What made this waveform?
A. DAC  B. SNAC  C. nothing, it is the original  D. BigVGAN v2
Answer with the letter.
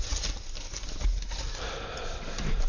C